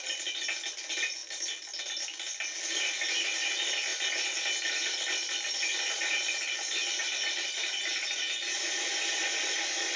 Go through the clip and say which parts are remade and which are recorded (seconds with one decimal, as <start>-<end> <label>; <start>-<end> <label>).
0.0-7.0 recorded; 7.0-7.5 remade; 7.5-10.0 recorded